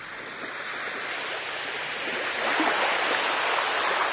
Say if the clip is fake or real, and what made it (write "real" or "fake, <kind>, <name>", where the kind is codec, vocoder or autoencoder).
real